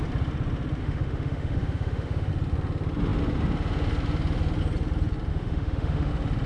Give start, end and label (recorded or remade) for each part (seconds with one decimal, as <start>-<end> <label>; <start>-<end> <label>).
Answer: 0.0-0.8 recorded; 0.8-2.3 remade; 2.3-5.3 recorded; 5.3-6.1 remade; 6.1-6.5 recorded